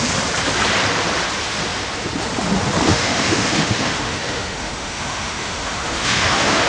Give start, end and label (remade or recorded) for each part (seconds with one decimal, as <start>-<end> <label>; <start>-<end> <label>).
0.0-2.9 recorded; 2.9-6.7 remade